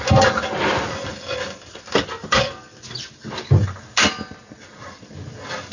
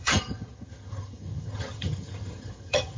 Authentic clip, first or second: first